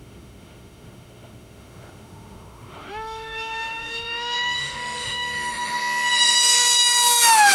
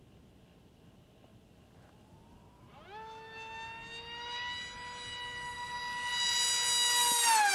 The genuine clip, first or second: second